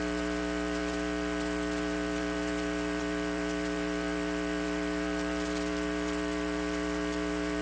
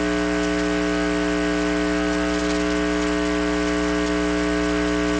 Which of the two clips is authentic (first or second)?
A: second